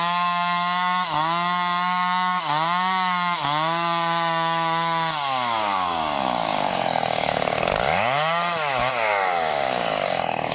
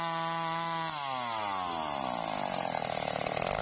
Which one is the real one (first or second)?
second